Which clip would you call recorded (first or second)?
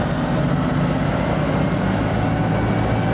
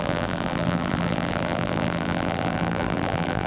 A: first